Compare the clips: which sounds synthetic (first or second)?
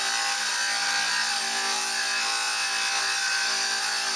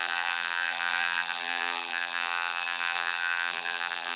second